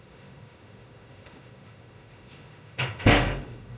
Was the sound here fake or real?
fake